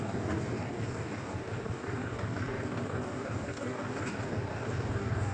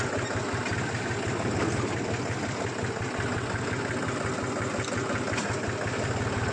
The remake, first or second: first